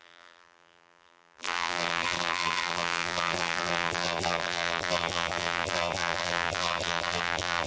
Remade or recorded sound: remade